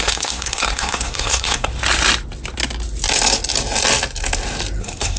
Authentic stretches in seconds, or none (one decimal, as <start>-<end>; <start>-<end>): 1.7-4.8